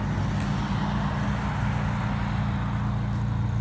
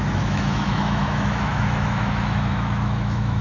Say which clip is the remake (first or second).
second